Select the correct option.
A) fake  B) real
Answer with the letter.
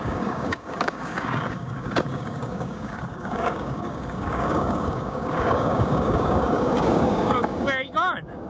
A